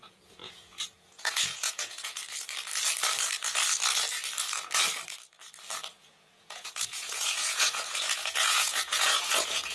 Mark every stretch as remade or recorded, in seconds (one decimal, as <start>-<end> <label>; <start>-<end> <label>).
0.0-2.2 remade; 2.2-5.9 recorded; 5.9-9.7 remade